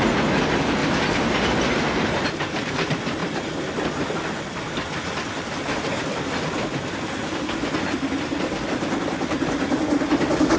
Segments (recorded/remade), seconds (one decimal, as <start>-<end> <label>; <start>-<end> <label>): 0.0-10.6 recorded